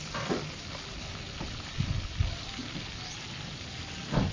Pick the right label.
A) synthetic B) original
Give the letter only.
B